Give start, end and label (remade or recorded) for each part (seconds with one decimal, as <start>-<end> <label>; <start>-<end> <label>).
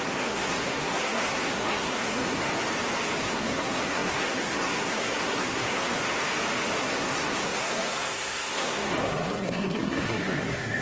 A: 0.0-2.5 remade; 2.5-3.2 recorded; 3.2-6.0 remade; 6.0-6.8 recorded; 6.8-10.8 remade